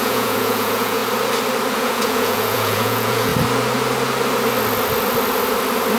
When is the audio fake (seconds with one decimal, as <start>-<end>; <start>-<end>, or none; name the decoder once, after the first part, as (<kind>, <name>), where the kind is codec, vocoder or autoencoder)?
0.0-1.0 (vocoder, Vocos); 1.8-3.3